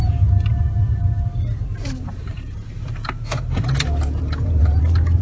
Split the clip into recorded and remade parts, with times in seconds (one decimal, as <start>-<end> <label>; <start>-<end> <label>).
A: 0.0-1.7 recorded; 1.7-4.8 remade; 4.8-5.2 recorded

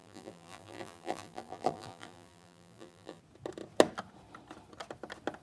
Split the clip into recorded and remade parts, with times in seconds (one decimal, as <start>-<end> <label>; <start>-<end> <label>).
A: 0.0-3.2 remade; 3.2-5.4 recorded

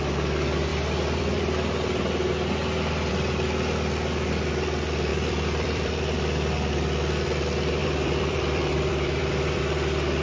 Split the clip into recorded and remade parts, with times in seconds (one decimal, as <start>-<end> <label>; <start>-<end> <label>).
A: 0.0-0.7 recorded; 0.7-3.1 remade; 3.1-5.1 recorded; 5.1-5.9 remade; 5.9-7.8 recorded; 7.8-9.6 remade; 9.6-10.2 recorded

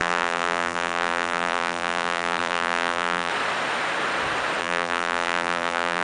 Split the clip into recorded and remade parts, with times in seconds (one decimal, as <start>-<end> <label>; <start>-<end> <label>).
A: 0.0-3.3 remade; 3.3-4.6 recorded; 4.6-6.0 remade

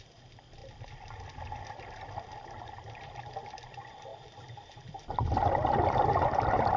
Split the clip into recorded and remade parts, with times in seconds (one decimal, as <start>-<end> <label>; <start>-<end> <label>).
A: 0.0-4.1 recorded; 4.1-6.8 remade

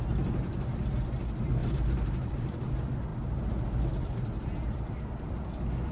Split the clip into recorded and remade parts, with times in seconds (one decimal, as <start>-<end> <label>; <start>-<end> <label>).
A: 0.0-1.6 recorded; 1.6-2.7 remade; 2.7-5.9 recorded